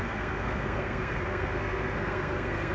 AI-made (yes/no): yes